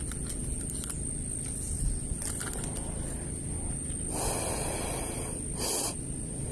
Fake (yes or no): no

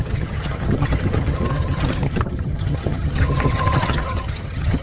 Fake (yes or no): yes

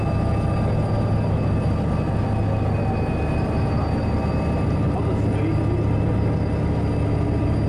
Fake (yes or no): no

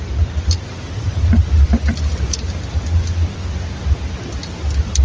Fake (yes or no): no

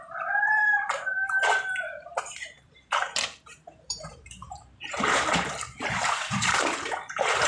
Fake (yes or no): yes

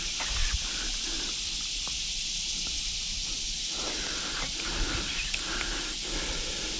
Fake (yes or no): no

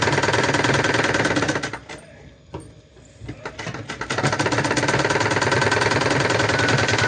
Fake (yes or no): no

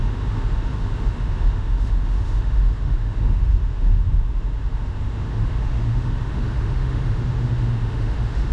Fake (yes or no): yes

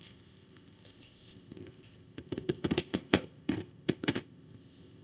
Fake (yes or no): yes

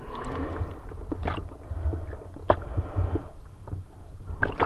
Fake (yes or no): no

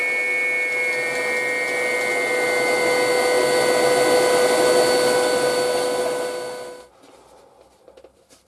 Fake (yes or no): no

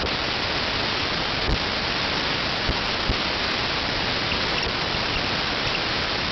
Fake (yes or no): no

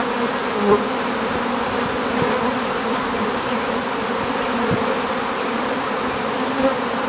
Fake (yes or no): no